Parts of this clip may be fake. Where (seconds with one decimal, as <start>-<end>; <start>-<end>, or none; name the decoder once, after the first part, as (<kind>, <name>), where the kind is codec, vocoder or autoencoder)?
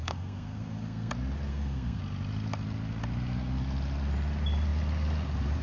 0.0-1.1 (codec, SNAC); 1.5-2.0